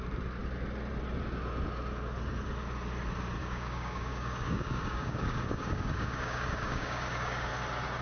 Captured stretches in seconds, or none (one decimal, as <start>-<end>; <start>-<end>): 0.0-3.4; 7.5-8.0